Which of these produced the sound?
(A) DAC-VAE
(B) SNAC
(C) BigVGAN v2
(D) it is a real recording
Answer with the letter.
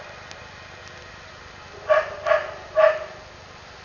D